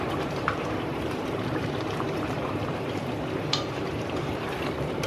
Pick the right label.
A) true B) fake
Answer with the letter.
B